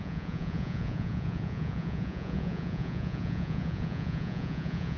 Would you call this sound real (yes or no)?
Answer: no